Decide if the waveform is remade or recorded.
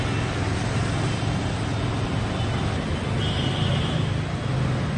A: recorded